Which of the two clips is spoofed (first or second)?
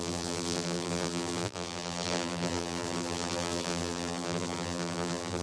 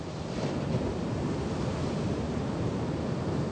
first